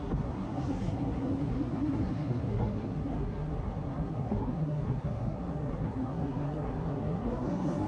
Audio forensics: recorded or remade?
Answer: remade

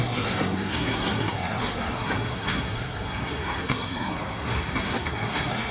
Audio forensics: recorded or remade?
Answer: remade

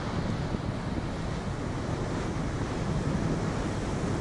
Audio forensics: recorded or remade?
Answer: recorded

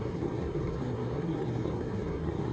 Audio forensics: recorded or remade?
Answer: remade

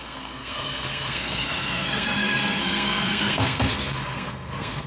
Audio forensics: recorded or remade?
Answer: remade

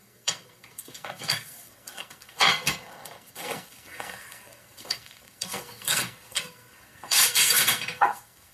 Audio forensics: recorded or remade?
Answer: remade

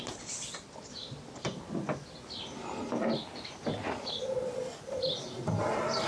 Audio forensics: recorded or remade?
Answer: recorded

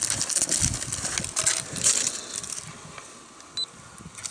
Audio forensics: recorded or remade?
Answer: recorded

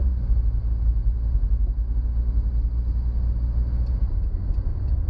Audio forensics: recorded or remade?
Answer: recorded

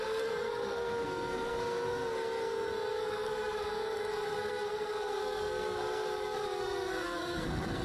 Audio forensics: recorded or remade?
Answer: remade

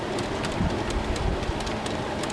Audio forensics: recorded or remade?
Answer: recorded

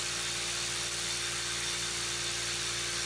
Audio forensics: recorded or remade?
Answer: recorded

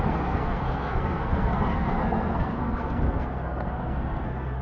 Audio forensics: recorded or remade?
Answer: remade